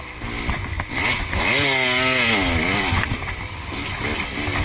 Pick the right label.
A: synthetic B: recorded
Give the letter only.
B